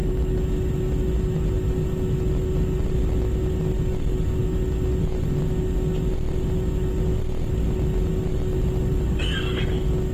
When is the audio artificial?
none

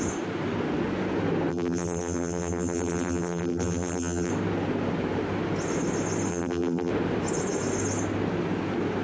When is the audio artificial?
1.5-4.3 (vocoder, BigVGAN v2); 6.3-6.9

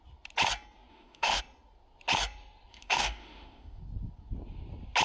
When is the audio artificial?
0.9-1.4 (autoencoder, DAC-VAE); 2.7-3.8

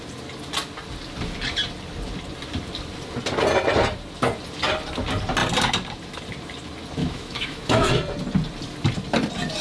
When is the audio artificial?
7.0-7.9 (autoencoder, DAC-VAE)

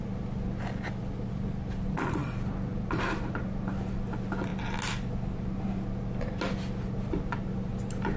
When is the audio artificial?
none